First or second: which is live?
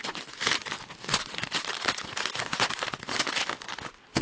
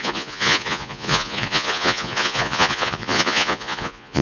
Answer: first